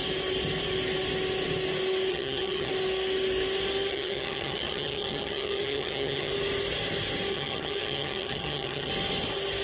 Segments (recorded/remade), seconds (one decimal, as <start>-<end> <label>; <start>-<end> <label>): 0.0-2.1 recorded; 2.1-2.7 remade; 2.7-3.9 recorded; 3.9-6.3 remade; 6.3-7.3 recorded; 7.3-8.9 remade; 8.9-9.6 recorded

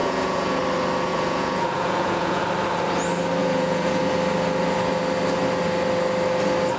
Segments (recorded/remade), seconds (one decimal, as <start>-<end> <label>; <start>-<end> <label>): 0.0-0.6 remade; 0.6-1.1 recorded; 1.1-2.4 remade; 2.4-3.4 recorded; 3.4-4.0 remade; 4.0-6.8 recorded

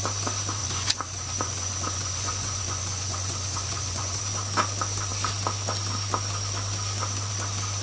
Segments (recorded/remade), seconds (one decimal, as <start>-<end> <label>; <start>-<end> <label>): 0.0-0.6 recorded; 0.6-4.2 remade; 4.2-7.8 recorded

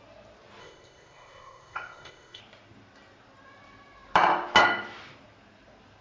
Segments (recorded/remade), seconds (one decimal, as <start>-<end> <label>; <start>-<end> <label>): 0.0-0.6 recorded; 0.6-2.4 remade; 2.4-6.0 recorded

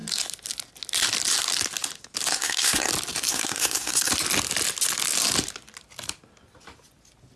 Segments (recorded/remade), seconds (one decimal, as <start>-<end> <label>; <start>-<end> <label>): 0.0-2.3 recorded; 2.3-2.9 remade; 2.9-3.3 recorded; 3.3-4.1 remade; 4.1-7.4 recorded

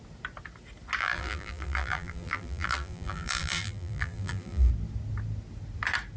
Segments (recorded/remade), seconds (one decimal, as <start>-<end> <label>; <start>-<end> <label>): 0.0-1.0 recorded; 1.0-4.7 remade; 4.7-6.2 recorded

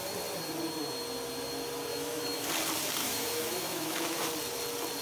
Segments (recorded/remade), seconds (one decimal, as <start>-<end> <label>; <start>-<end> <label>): 0.0-1.9 recorded; 1.9-2.5 remade; 2.5-3.0 recorded; 3.0-4.3 remade; 4.3-5.0 recorded